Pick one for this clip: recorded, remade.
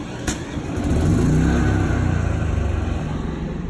recorded